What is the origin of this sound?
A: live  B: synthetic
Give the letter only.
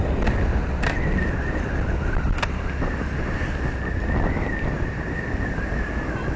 A